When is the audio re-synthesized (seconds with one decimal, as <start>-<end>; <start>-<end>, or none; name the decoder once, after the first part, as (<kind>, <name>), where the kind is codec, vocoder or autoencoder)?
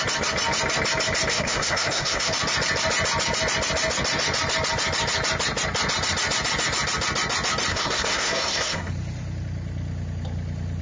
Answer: 1.3-2.3 (codec, SNAC); 7.7-8.9